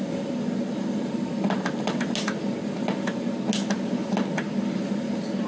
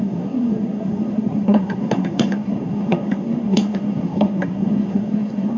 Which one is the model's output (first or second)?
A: second